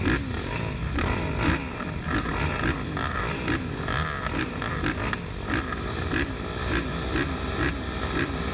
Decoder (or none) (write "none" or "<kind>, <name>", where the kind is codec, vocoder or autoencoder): none